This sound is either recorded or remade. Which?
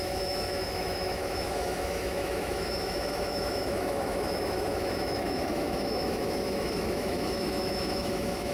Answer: remade